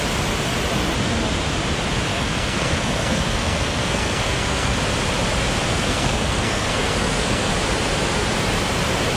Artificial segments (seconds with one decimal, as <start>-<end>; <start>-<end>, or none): 2.1-4.8; 5.7-7.5